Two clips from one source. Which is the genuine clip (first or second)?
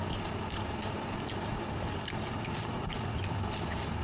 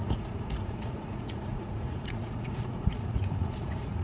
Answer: first